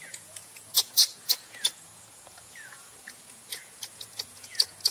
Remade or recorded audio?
remade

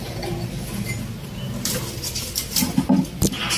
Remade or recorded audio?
recorded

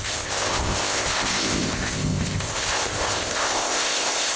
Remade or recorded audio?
remade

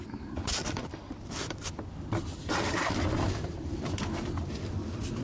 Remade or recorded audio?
remade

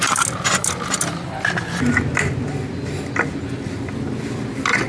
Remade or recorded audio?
recorded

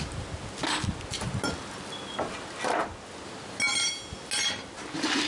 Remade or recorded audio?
recorded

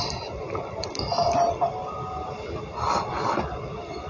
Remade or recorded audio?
recorded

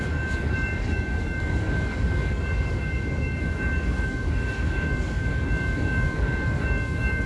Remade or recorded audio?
remade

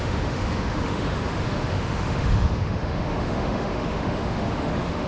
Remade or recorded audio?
remade